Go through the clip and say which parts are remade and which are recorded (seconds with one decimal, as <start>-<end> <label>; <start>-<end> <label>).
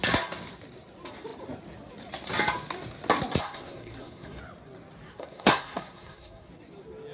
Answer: 0.0-3.4 recorded; 3.4-4.4 remade; 4.4-5.1 recorded; 5.1-6.5 remade; 6.5-7.1 recorded